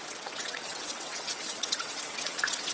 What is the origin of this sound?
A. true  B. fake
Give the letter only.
B